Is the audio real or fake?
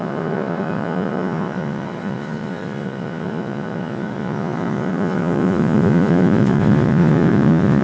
fake